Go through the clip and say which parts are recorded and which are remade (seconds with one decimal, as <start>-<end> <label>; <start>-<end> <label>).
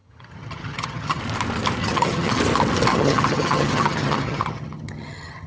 0.0-1.2 remade; 1.2-1.8 recorded; 1.8-2.4 remade; 2.4-2.9 recorded; 2.9-5.5 remade